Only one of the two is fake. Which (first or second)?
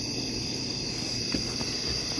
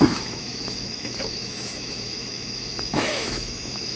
second